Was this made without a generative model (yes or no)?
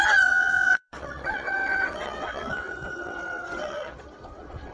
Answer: no